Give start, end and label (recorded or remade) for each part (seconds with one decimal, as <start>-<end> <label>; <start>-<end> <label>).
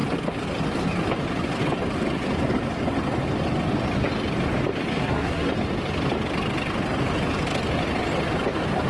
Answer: 0.0-4.9 recorded; 4.9-5.5 remade; 5.5-8.9 recorded